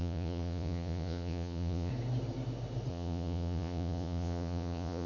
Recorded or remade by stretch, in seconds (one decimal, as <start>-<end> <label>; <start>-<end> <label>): 0.0-1.9 remade; 1.9-2.9 recorded; 2.9-5.1 remade